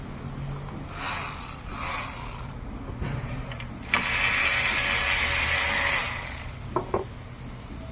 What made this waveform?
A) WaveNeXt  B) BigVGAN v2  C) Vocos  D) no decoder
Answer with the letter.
D